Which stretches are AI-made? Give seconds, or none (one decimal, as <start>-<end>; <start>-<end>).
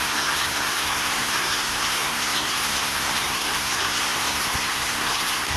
0.0-5.6